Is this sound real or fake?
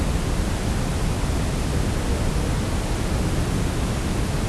real